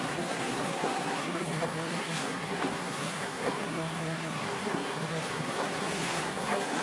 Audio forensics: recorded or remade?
remade